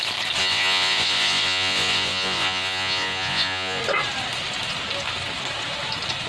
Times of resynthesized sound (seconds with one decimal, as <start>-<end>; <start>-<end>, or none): 0.4-3.8